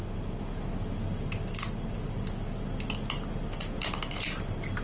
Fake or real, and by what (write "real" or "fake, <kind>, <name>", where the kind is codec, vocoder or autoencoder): real